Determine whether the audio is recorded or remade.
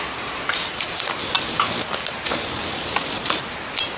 recorded